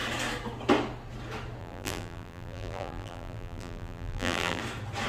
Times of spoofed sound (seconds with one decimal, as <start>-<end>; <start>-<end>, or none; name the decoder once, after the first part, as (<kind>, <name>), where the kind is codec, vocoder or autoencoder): 1.6-4.6 (vocoder, BigVGAN v2)